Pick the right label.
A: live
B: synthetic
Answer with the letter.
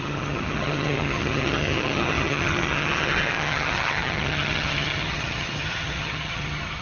B